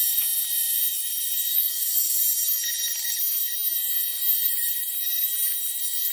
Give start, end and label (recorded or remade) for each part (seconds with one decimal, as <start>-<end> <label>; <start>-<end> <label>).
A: 0.0-1.5 recorded; 1.5-2.2 remade; 2.2-6.1 recorded